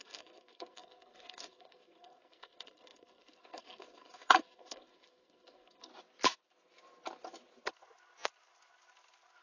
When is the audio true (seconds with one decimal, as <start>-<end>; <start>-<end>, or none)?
5.9-9.4